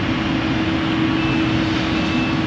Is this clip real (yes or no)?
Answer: yes